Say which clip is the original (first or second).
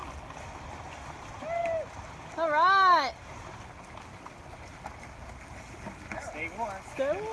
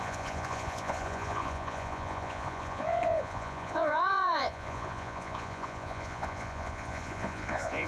first